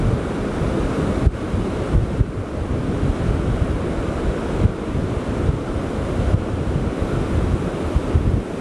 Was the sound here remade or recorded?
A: recorded